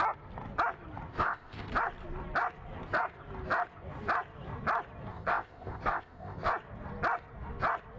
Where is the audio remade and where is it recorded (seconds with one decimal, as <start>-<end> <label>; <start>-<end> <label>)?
0.0-1.1 recorded; 1.1-1.7 remade; 1.7-5.1 recorded; 5.1-6.5 remade; 6.5-8.0 recorded